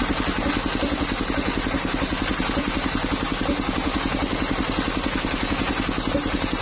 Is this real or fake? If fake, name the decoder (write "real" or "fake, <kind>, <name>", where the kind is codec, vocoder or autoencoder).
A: real